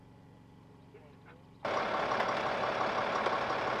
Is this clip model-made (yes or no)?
no